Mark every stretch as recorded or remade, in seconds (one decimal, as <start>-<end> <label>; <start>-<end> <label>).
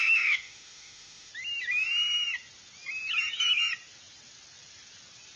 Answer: 0.0-1.3 remade; 1.3-5.4 recorded